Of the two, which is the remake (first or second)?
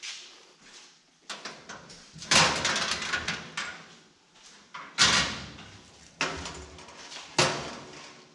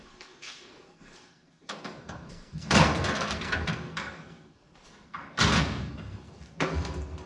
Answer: second